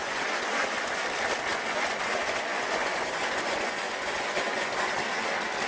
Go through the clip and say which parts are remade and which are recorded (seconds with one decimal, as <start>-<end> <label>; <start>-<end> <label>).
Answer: 0.0-1.0 remade; 1.0-1.5 recorded; 1.5-4.9 remade; 4.9-5.7 recorded